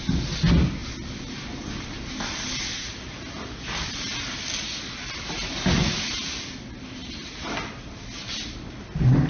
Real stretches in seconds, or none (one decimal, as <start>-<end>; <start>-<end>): 0.0-5.8; 6.4-9.3